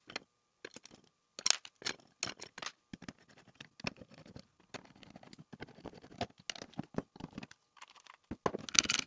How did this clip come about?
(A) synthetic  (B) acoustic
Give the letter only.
B